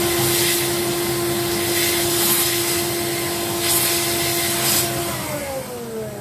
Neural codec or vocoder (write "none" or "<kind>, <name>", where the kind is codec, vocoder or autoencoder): none